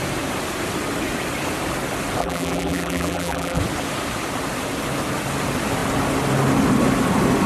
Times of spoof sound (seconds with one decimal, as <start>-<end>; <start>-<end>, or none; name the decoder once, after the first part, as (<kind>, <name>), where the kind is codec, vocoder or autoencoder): 2.2-3.6 (vocoder, BigVGAN v2)